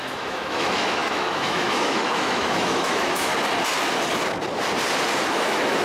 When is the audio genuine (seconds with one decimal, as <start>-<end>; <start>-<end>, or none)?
3.3-5.3